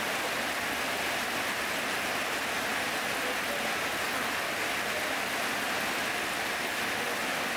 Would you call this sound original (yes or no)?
yes